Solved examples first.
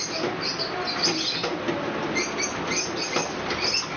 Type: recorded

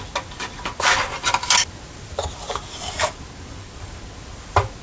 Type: recorded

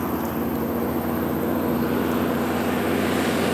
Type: recorded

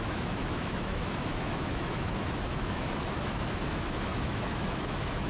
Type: remade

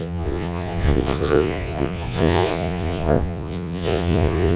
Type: remade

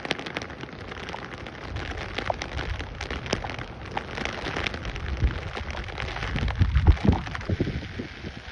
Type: recorded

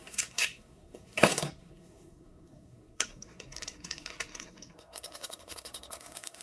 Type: remade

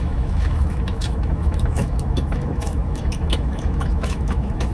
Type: remade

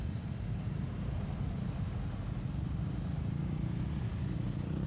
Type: recorded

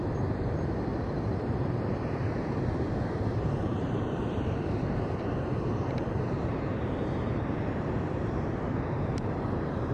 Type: remade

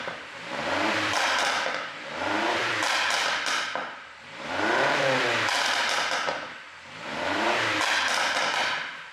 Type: remade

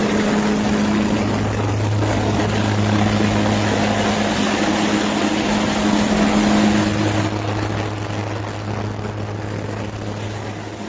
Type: recorded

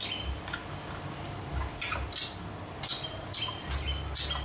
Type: recorded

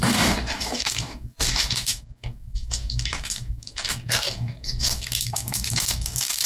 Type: remade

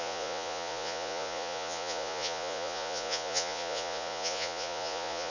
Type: remade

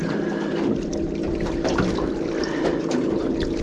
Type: recorded